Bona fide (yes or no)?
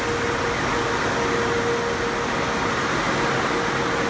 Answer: yes